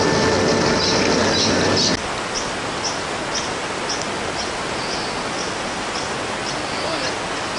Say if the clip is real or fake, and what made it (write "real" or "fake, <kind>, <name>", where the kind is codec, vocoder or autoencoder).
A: real